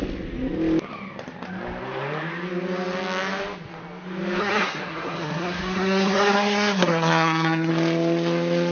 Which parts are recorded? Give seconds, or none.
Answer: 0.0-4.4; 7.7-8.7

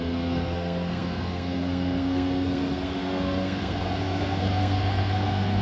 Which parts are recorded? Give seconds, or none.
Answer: none

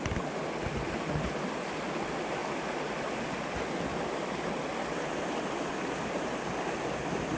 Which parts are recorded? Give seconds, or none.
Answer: 0.0-7.4

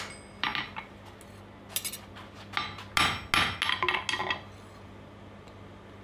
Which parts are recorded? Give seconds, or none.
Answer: 0.0-6.0

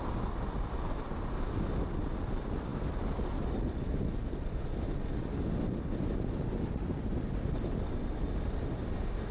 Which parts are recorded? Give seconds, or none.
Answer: 0.0-9.3

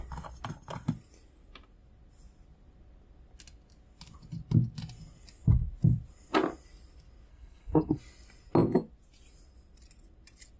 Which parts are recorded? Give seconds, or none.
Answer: 0.0-7.3; 8.0-10.6